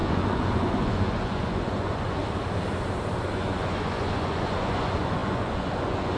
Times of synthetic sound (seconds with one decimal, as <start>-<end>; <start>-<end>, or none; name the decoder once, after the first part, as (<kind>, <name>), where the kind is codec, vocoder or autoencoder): 0.0-2.2 (vocoder, Vocos); 3.3-6.2